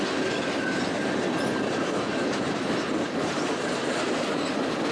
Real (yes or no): yes